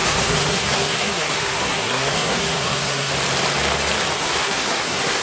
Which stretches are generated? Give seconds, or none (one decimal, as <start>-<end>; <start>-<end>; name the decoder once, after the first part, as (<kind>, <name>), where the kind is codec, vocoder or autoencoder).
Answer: 0.0-3.1 (codec, SNAC); 4.2-5.2